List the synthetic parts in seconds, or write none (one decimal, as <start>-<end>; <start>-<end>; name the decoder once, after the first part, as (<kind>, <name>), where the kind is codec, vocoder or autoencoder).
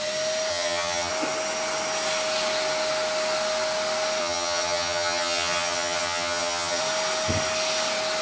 0.5-1.1 (vocoder, HiFi-GAN); 4.2-6.8